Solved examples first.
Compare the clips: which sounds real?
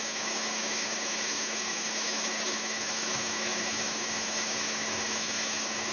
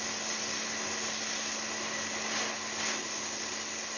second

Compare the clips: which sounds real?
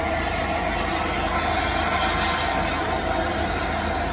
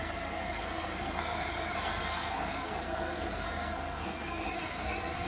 first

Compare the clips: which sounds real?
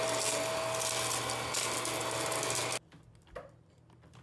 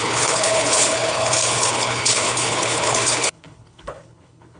first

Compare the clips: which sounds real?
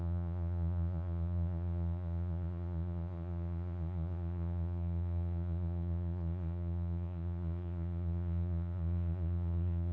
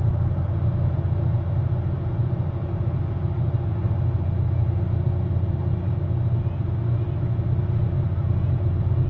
second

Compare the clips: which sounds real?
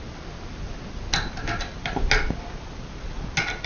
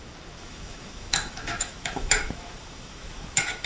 first